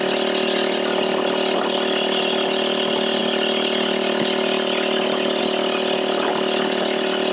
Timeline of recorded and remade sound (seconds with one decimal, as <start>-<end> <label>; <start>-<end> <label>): 0.0-7.3 recorded